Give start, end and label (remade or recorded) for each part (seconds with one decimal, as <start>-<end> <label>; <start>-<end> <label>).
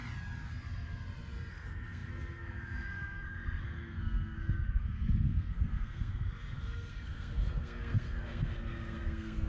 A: 0.0-1.5 recorded; 1.5-9.5 remade